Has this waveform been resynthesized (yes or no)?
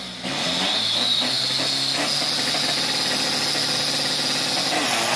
no